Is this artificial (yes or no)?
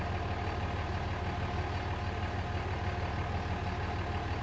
no